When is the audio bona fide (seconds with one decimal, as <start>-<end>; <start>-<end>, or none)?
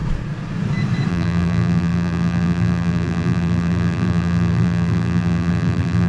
0.0-1.1